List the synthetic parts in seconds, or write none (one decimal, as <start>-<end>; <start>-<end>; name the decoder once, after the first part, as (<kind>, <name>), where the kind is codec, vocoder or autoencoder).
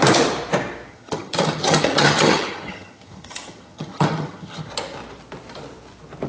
0.9-4.7 (vocoder, HiFi-GAN)